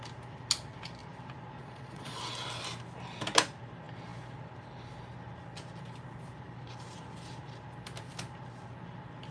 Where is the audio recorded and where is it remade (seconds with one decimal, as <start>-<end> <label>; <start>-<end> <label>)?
0.0-1.6 recorded; 1.6-2.2 remade; 2.2-9.3 recorded